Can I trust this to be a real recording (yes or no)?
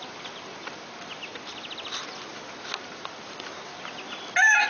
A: no